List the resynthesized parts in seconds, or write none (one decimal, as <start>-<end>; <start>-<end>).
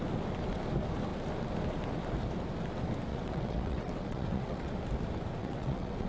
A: 3.1-4.7; 5.4-6.1